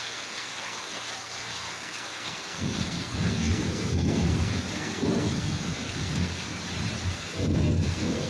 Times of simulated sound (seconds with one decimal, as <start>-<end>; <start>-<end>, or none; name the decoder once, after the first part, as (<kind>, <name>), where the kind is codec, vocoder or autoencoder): 0.0-6.5 (codec, SNAC); 7.1-8.3